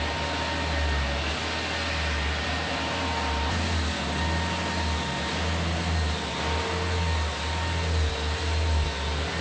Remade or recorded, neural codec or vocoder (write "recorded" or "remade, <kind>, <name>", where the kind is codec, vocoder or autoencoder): recorded